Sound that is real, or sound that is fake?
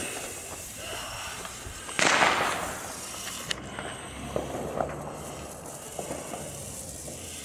real